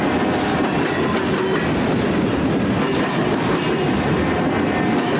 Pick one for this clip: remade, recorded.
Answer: recorded